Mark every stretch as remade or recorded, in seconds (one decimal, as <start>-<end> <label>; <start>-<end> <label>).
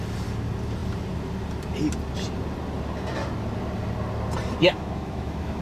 0.0-4.6 recorded; 4.6-5.6 remade